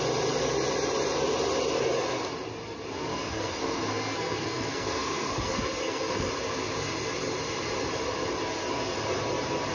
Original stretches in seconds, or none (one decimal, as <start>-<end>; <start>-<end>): 0.0-3.1; 6.3-9.7